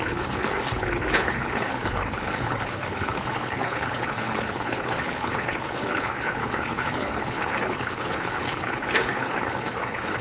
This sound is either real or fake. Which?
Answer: fake